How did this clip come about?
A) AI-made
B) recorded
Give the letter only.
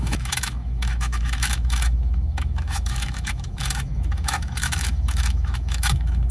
A